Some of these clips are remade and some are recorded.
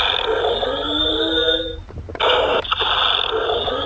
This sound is recorded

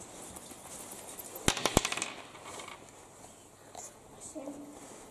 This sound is recorded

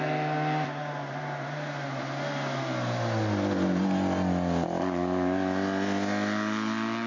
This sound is recorded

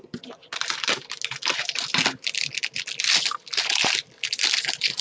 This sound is recorded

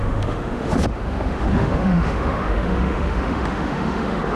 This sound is remade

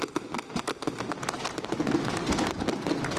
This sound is recorded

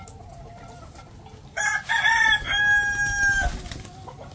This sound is recorded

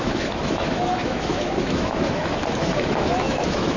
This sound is remade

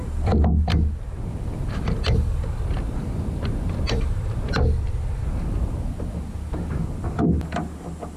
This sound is recorded